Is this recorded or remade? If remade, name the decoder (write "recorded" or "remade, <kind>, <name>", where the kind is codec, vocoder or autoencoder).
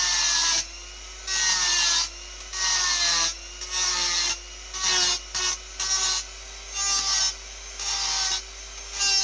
recorded